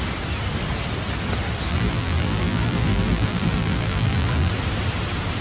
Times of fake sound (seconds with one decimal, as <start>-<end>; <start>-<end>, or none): 1.7-4.5